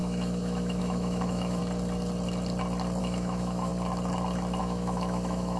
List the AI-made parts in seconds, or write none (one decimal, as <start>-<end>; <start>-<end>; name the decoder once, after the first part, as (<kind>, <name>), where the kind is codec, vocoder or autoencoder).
0.0-1.6 (autoencoder, DAC-VAE); 3.0-3.7; 4.6-5.6